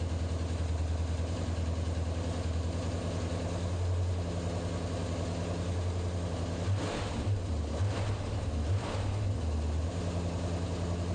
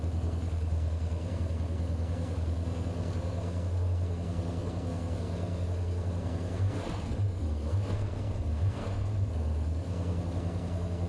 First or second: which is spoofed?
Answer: second